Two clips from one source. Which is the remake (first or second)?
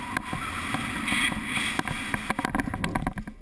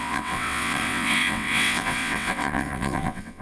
second